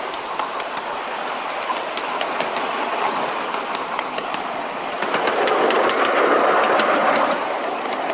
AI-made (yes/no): no